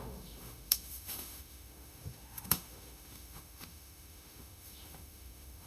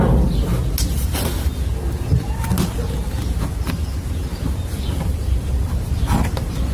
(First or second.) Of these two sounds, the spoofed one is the first